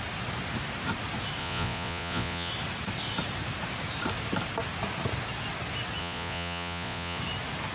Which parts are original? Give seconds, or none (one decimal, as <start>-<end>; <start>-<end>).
0.0-1.4; 2.5-6.0; 7.2-7.7